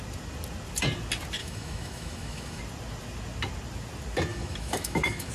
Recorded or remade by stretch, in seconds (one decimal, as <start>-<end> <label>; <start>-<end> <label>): 0.0-1.4 recorded; 1.4-2.6 remade; 2.6-4.3 recorded; 4.3-5.3 remade